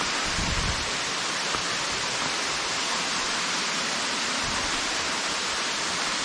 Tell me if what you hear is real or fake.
real